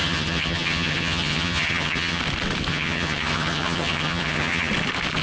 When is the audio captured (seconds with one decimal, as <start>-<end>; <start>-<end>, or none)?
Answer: 2.2-2.7; 4.7-5.2